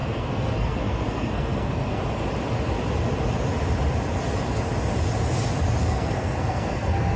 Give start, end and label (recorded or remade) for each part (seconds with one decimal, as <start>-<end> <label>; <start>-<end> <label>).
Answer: 0.0-2.0 remade; 2.0-5.8 recorded; 5.8-7.2 remade